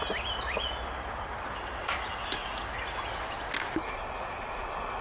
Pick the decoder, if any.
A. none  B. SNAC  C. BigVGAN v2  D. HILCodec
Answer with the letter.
A